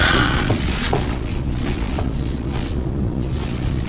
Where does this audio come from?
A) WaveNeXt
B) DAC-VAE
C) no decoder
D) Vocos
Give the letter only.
D